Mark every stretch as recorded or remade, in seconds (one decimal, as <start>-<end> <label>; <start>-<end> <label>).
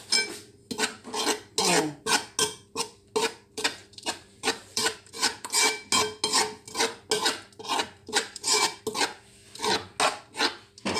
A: 0.0-3.8 recorded; 3.8-5.9 remade; 5.9-8.0 recorded; 8.0-8.8 remade; 8.8-11.0 recorded